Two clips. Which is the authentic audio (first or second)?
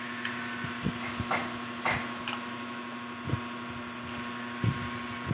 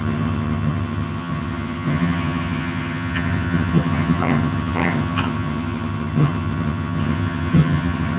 first